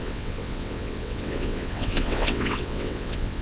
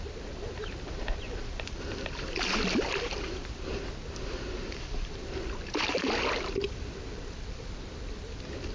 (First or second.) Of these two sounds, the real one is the second